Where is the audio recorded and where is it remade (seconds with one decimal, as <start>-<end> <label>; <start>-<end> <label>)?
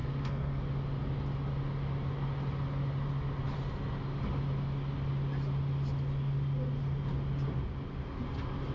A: 0.0-0.6 remade; 0.6-8.7 recorded